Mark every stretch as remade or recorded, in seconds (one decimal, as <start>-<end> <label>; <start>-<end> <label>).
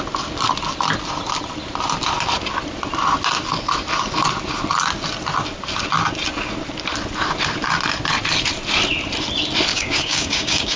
0.0-9.7 recorded; 9.7-10.8 remade